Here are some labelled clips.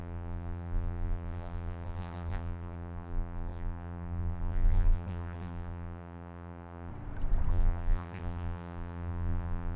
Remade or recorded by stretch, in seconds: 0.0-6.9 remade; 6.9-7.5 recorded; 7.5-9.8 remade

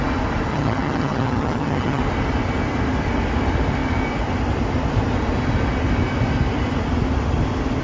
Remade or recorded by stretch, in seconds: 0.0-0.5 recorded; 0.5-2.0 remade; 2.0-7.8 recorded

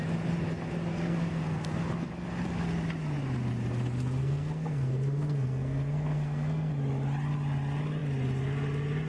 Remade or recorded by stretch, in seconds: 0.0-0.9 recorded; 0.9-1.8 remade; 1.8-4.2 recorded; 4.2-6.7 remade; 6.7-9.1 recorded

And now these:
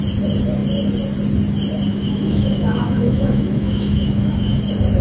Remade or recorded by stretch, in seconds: 0.0-1.9 recorded; 1.9-4.6 remade; 4.6-5.0 recorded

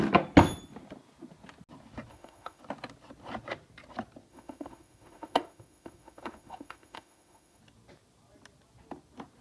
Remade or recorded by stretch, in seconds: 0.0-2.1 recorded; 2.1-2.6 remade; 2.6-4.3 recorded; 4.3-7.6 remade; 7.6-9.4 recorded

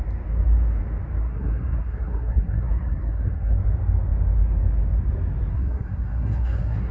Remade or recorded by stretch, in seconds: 0.0-1.2 recorded; 1.2-3.6 remade; 3.6-5.5 recorded; 5.5-6.9 remade

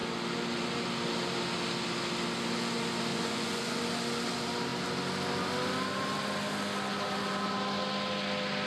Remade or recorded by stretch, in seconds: 0.0-3.1 recorded; 3.1-3.8 remade; 3.8-8.7 recorded